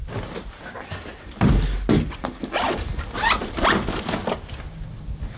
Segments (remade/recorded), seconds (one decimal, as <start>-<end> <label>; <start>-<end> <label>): 0.0-5.4 recorded